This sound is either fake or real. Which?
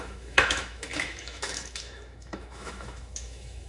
fake